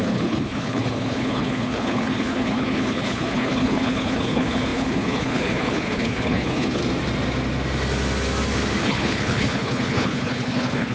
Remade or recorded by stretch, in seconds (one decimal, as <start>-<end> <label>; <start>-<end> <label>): 0.0-6.8 remade; 6.8-8.8 recorded; 8.8-10.9 remade